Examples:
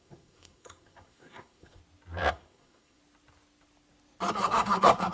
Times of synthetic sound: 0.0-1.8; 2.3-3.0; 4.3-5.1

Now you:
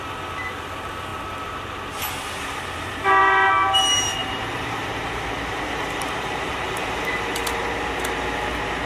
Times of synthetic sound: 3.2-3.8; 4.2-6.8

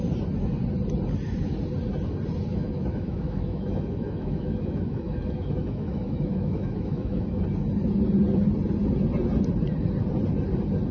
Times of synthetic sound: 2.5-7.4

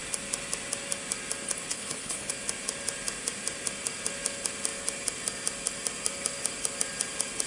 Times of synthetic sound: 1.7-2.3

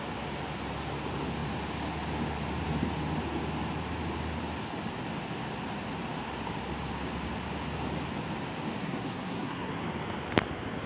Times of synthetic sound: 8.8-9.7

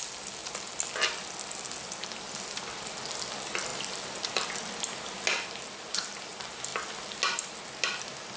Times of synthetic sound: none

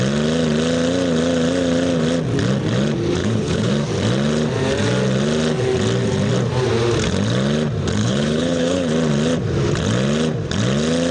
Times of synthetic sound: 3.2-3.7; 8.0-8.9